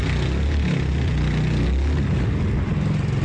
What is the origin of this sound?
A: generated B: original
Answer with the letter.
B